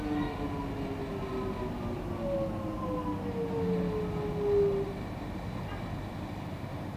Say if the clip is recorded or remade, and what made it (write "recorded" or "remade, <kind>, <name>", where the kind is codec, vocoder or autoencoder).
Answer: recorded